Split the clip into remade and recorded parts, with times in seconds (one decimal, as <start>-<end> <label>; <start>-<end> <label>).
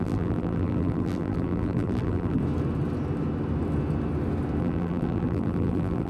0.0-2.4 remade; 2.4-4.6 recorded; 4.6-6.1 remade